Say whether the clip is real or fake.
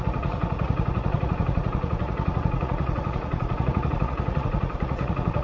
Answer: fake